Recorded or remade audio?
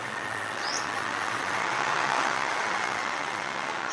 remade